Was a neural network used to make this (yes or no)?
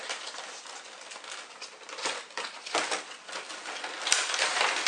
no